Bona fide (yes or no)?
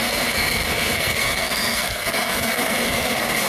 no